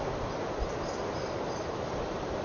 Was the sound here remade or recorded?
recorded